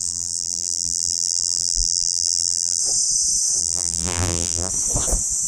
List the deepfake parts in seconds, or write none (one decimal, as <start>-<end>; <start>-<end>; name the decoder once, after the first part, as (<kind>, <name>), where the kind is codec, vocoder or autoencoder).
0.0-2.8 (vocoder, BigVGAN v2); 3.6-4.7